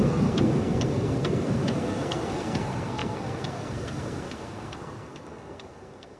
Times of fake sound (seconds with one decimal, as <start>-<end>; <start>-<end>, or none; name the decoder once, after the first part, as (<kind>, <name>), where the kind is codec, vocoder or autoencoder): 0.0-6.2 (codec, SNAC)